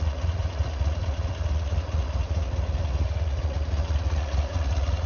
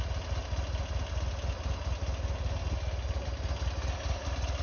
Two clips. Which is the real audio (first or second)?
second